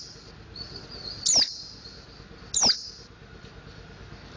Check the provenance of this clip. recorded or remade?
recorded